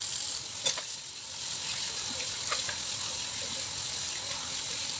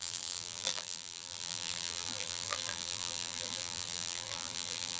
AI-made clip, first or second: second